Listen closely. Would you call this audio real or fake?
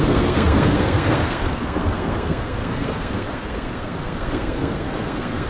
fake